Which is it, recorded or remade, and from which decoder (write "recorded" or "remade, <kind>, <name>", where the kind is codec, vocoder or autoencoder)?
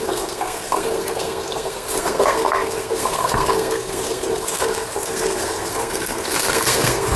remade, codec, SNAC